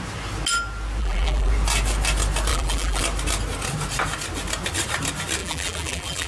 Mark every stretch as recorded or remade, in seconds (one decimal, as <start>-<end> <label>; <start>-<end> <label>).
0.0-1.0 recorded; 1.0-1.5 remade; 1.5-2.5 recorded; 2.5-3.0 remade; 3.0-5.4 recorded; 5.4-6.3 remade